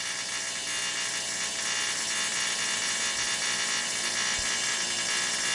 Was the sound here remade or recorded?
recorded